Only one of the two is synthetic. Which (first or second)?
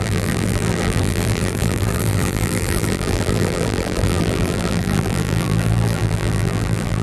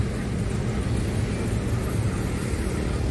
first